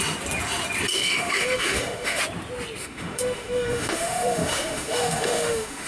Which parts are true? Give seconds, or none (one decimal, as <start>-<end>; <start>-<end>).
0.0-0.9; 2.2-2.8